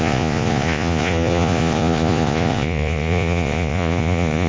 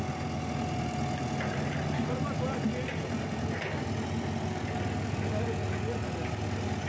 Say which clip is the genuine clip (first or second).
second